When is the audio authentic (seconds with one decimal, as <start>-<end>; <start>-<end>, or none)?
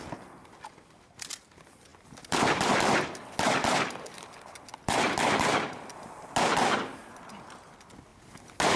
0.0-8.8